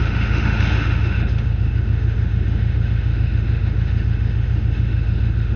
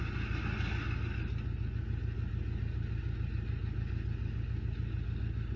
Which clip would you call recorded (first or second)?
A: second